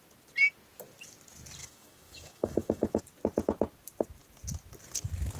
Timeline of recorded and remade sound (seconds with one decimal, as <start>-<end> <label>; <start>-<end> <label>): 0.0-1.6 recorded; 1.6-3.0 remade; 3.0-5.4 recorded